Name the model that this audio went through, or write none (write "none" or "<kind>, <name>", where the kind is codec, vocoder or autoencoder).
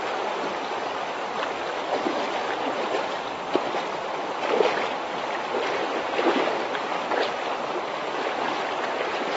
none